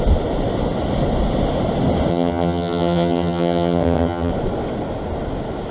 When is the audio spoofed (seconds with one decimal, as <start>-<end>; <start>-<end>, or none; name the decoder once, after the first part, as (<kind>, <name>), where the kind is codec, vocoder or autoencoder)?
2.1-4.3 (vocoder, HiFi-GAN)